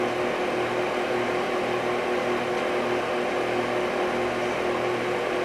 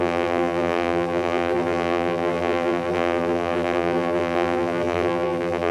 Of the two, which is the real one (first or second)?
first